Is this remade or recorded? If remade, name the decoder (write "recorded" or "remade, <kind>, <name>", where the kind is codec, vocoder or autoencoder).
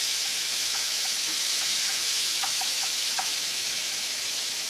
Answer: remade, autoencoder, DAC-VAE